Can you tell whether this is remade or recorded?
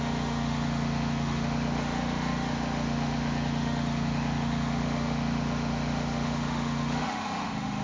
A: remade